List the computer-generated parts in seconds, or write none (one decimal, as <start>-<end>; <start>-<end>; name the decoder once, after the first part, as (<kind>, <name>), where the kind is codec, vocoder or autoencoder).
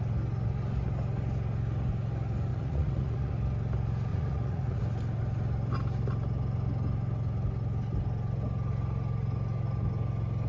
2.5-3.3 (vocoder, Vocos); 4.1-4.8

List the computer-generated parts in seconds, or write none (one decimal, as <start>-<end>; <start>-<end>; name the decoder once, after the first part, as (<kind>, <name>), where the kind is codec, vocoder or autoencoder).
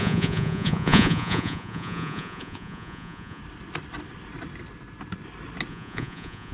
0.0-3.4 (vocoder, Vocos); 5.7-6.5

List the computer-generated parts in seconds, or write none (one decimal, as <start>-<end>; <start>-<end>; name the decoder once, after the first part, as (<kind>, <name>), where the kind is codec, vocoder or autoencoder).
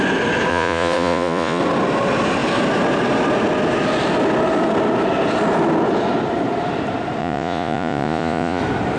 0.5-1.6 (vocoder, Vocos); 7.2-8.6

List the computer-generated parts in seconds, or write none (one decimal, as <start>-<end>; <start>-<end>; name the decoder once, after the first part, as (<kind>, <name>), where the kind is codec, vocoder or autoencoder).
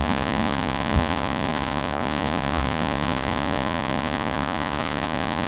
0.0-5.5 (vocoder, Vocos)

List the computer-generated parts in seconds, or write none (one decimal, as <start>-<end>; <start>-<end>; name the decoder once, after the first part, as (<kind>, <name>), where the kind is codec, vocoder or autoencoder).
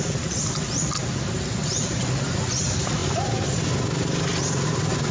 none